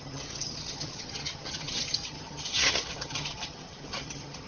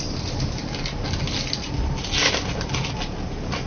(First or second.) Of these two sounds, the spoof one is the first